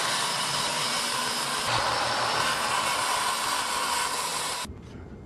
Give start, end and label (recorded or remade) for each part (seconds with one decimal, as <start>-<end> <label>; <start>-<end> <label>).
0.0-5.3 recorded